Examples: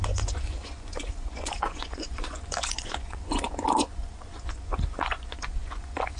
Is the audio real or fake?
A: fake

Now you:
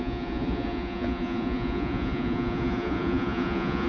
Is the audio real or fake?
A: fake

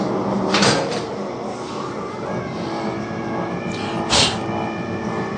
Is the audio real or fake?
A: real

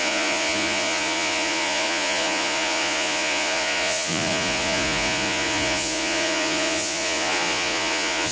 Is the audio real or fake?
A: fake